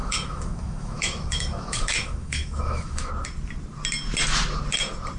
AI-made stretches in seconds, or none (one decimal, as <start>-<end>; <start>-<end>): 0.0-3.1